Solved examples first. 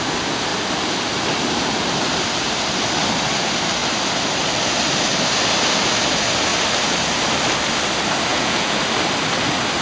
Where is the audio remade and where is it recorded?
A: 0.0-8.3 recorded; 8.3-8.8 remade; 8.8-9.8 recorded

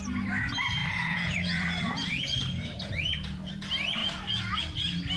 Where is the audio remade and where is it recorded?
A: 0.0-0.8 recorded; 0.8-3.5 remade; 3.5-4.0 recorded; 4.0-4.6 remade; 4.6-5.2 recorded